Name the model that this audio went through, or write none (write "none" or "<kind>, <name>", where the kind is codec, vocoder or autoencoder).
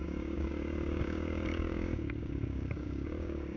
codec, DAC